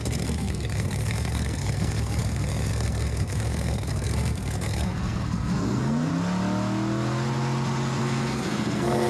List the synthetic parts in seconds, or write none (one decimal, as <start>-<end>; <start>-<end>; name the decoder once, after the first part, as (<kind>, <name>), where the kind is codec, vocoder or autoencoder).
0.0-6.1 (codec, SNAC); 8.0-9.1